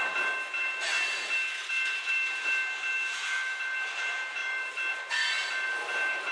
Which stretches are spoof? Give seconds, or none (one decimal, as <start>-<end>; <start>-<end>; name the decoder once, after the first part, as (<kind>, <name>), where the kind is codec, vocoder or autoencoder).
3.1-3.6 (autoencoder, DAC-VAE)